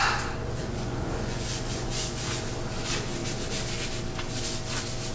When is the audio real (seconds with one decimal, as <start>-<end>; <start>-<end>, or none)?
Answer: 0.0-0.6; 2.5-5.1